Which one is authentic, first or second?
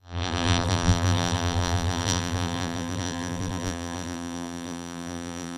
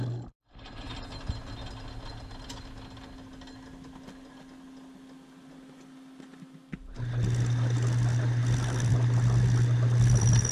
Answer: second